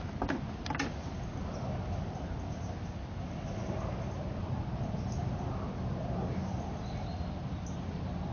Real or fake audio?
real